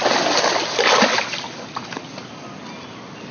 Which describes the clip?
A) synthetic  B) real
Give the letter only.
B